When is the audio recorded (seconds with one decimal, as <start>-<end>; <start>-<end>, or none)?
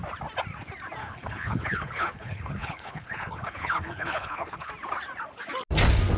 0.0-1.0; 4.7-6.2